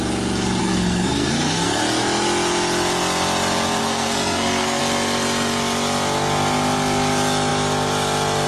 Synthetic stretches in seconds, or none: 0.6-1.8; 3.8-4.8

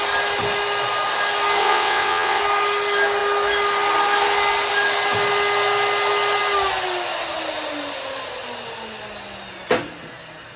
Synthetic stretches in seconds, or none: 1.6-2.4

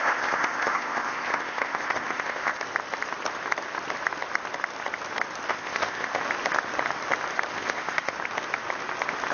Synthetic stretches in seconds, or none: 0.0-2.6; 5.5-6.2; 7.5-8.1

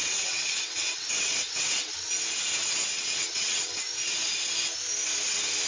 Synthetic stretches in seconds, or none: 0.0-2.1; 2.6-3.8

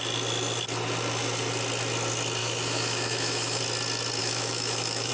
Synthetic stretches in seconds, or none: 2.4-3.6; 4.2-5.1

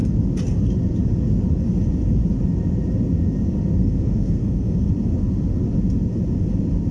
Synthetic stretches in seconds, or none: 3.8-4.9

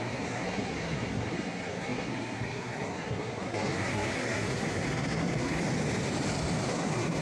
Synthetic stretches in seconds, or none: 0.0-5.6; 6.7-7.2